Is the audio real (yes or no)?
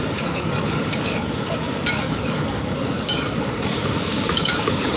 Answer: no